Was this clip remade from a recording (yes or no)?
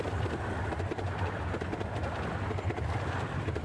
no